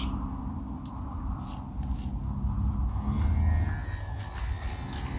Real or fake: real